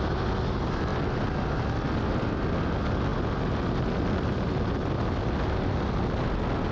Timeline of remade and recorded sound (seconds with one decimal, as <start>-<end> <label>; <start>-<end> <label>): 0.0-6.7 recorded